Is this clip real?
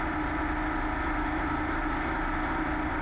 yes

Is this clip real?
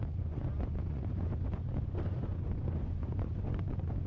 no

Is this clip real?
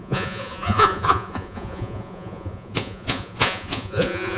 no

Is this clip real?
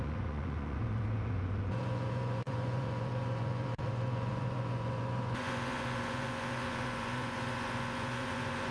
no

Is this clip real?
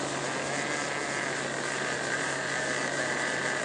yes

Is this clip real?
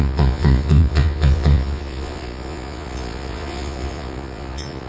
no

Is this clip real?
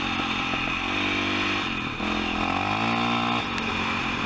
yes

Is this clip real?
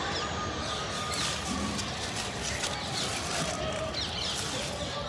yes